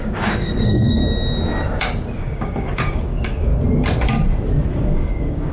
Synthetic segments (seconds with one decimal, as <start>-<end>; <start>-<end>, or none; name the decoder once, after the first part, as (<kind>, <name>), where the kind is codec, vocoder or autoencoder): 0.0-1.0 (codec, DAC); 2.2-3.5; 4.7-5.5

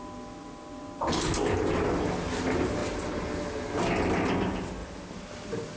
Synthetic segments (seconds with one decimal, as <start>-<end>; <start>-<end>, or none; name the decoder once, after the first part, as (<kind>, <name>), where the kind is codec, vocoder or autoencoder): none

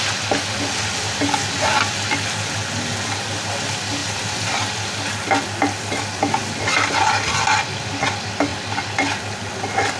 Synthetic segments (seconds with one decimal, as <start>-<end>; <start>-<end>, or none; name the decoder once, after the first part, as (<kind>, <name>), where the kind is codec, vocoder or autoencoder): none